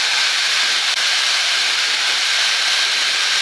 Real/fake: real